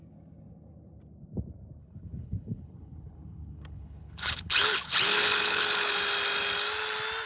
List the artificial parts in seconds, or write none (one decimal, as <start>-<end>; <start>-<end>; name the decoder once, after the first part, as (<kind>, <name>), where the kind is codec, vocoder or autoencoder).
1.8-5.9 (codec, HILCodec)